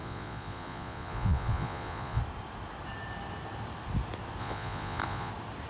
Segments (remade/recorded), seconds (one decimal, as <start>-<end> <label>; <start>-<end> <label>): 0.0-2.2 remade; 2.2-4.4 recorded; 4.4-5.3 remade; 5.3-5.7 recorded